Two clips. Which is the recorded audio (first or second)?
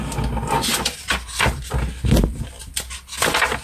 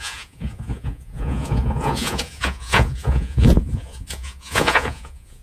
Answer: first